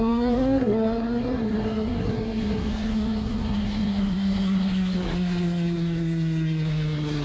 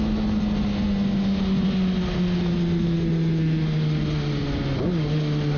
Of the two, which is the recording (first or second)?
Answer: second